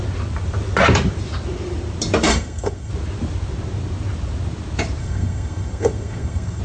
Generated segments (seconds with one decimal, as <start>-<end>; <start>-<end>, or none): 2.3-2.9; 5.0-6.6